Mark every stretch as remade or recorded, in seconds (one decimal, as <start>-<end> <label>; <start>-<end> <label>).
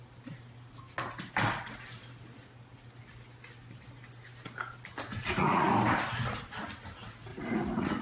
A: 0.0-5.1 recorded; 5.1-5.7 remade; 5.7-7.3 recorded; 7.3-8.0 remade